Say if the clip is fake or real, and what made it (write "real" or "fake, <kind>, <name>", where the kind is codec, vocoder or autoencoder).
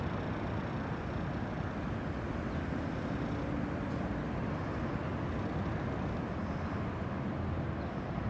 real